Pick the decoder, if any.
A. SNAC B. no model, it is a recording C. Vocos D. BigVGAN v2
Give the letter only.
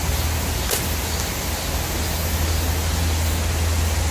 B